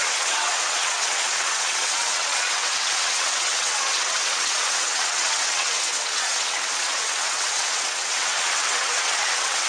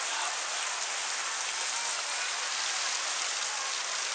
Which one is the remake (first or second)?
first